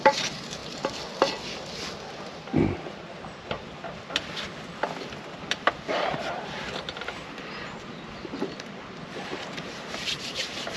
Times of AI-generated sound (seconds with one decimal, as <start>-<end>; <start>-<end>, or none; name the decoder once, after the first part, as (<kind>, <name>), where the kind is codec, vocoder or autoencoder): 0.0-0.6 (vocoder, BigVGAN v2); 5.4-10.8